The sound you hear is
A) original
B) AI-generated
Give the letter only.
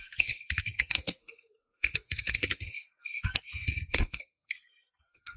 B